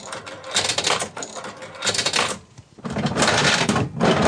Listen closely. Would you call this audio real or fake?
real